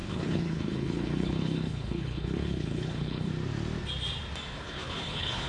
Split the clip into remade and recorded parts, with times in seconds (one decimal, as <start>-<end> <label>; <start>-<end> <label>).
0.0-3.3 remade; 3.3-4.5 recorded; 4.5-5.5 remade